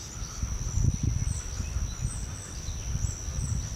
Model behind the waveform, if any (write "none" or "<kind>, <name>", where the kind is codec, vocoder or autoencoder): none